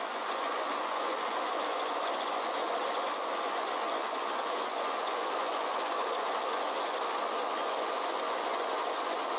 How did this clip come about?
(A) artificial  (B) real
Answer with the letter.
A